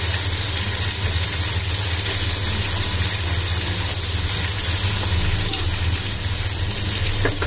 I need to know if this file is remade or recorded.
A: recorded